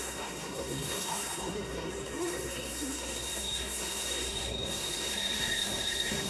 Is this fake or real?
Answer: fake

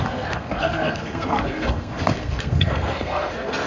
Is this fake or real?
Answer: fake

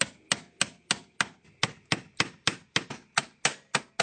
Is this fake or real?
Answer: real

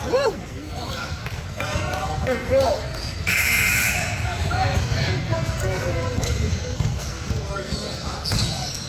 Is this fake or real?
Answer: fake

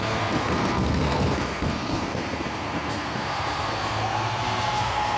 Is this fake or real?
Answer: fake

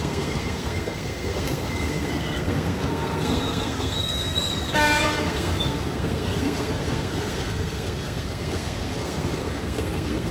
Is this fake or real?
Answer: fake